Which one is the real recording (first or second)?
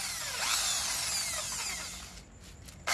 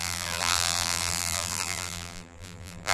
first